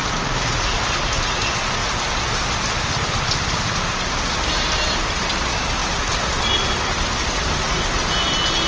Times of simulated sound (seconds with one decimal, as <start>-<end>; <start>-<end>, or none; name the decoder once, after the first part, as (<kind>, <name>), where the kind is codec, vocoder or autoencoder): none